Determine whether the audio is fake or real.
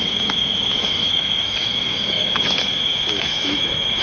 fake